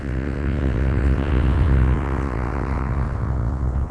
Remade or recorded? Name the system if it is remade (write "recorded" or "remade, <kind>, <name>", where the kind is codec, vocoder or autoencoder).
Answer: remade, vocoder, WaveNeXt